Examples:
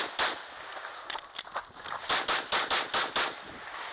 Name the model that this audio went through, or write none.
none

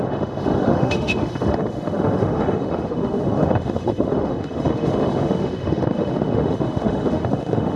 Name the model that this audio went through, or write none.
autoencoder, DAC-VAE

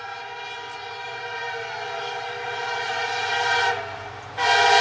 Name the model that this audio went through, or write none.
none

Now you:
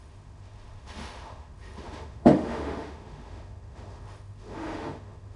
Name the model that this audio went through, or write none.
autoencoder, DAC-VAE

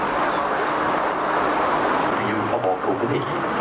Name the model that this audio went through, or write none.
none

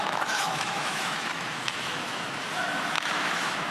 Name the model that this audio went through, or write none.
autoencoder, DAC-VAE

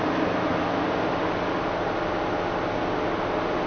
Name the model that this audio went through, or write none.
none